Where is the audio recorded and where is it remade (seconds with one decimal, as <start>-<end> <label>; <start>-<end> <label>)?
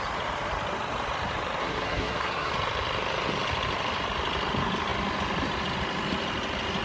0.0-1.6 recorded; 1.6-2.5 remade; 2.5-6.8 recorded